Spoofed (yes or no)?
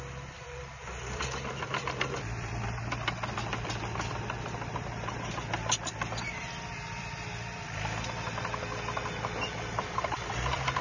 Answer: yes